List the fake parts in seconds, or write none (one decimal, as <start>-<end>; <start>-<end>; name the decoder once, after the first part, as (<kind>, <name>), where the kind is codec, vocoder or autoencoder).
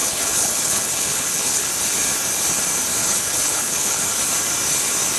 0.0-1.7 (codec, HILCodec); 3.0-4.0